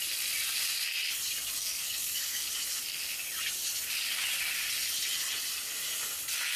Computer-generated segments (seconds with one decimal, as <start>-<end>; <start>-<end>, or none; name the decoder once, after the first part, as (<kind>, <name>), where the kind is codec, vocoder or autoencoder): 1.6-2.5 (codec, SNAC)